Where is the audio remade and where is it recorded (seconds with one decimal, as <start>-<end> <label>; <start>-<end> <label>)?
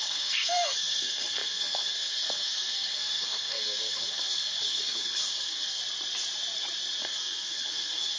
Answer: 0.0-5.8 remade; 5.8-7.0 recorded; 7.0-8.2 remade